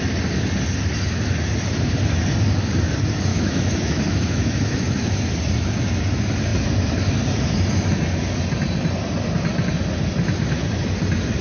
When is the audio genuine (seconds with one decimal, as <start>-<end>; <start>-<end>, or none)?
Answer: 0.0-3.3; 5.2-11.4